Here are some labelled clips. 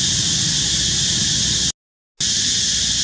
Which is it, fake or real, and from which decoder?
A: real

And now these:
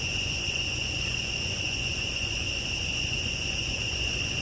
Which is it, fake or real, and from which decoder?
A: fake, vocoder, Vocos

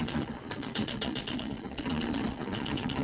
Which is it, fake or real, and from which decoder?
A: fake, vocoder, Vocos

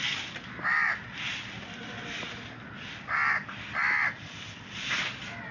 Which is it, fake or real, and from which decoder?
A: real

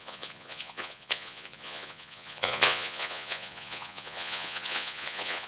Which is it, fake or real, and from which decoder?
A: fake, vocoder, Vocos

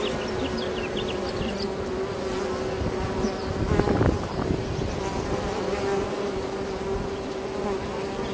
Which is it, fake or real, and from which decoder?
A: real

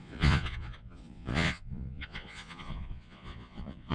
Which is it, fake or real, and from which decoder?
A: fake, vocoder, Vocos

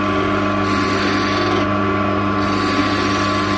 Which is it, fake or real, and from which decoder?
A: real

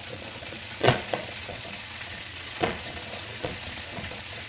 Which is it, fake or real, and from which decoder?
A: fake, vocoder, Vocos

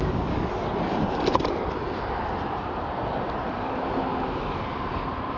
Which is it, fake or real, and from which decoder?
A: real